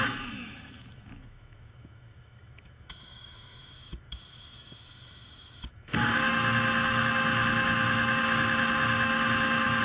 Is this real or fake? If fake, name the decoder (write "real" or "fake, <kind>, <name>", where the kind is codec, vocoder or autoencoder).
fake, autoencoder, DAC-VAE